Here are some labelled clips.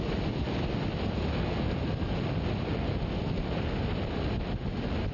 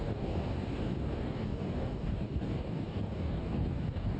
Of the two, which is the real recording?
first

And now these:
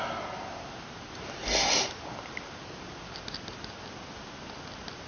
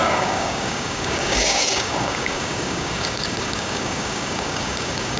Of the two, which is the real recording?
first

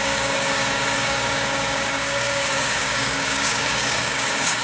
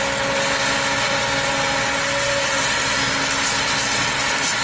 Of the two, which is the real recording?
second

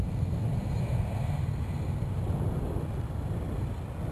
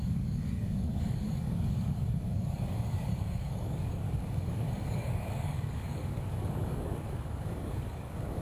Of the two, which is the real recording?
first